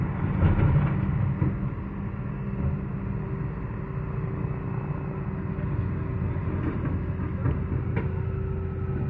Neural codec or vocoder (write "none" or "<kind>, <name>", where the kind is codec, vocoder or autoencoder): none